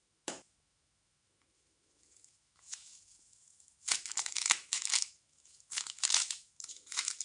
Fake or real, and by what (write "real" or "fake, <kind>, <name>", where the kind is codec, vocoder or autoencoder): fake, autoencoder, DAC-VAE